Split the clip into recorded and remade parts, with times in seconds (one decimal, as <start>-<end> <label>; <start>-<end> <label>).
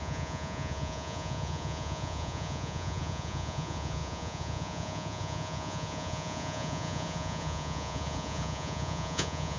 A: 0.0-9.6 remade